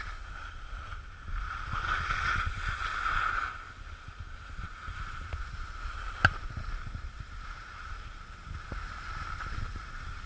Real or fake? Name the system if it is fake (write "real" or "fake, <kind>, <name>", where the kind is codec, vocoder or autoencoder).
real